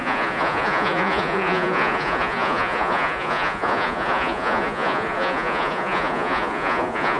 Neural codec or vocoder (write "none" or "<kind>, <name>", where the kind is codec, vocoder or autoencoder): vocoder, Vocos